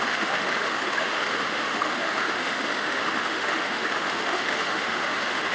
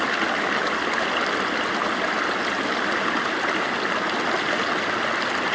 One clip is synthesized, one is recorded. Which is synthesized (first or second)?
first